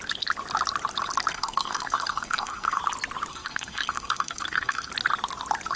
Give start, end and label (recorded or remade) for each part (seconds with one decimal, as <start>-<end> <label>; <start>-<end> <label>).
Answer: 0.0-1.3 recorded; 1.3-2.8 remade; 2.8-3.3 recorded; 3.3-4.9 remade; 4.9-5.8 recorded